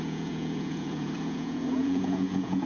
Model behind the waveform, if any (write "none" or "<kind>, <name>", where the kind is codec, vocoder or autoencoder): vocoder, Vocos